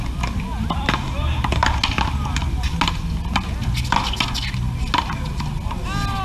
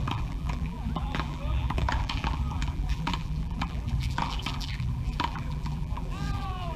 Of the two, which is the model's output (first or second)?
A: second